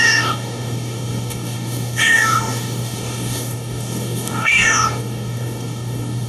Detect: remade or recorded remade